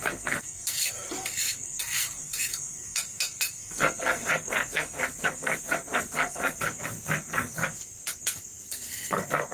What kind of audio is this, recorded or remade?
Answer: remade